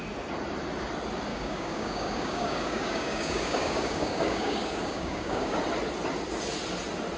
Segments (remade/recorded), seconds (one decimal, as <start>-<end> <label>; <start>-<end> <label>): 0.0-1.3 recorded; 1.3-5.6 remade; 5.6-7.2 recorded